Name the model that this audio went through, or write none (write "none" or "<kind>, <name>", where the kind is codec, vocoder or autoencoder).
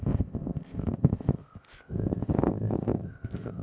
codec, ZipCodec